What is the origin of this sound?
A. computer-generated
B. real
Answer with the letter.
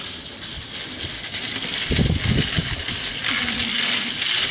B